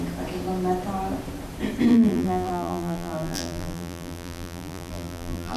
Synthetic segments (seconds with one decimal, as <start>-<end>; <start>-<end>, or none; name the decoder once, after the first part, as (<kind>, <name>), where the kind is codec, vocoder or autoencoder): 1.9-5.6 (vocoder, BigVGAN v2)